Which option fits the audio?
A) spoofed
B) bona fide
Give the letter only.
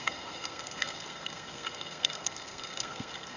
A